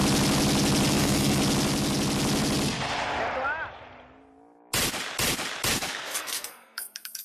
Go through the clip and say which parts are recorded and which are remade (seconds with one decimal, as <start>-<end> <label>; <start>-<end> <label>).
0.0-0.9 recorded; 0.9-1.4 remade; 1.4-5.7 recorded; 5.7-7.2 remade